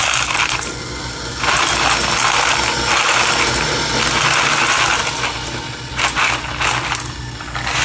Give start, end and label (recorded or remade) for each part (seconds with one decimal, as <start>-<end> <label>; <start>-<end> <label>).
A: 0.0-7.8 recorded